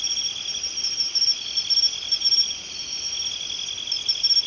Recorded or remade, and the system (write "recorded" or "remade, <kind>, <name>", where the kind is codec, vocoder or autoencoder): recorded